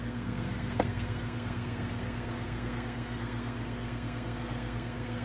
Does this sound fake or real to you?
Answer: fake